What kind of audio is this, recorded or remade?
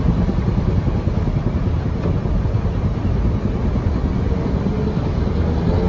recorded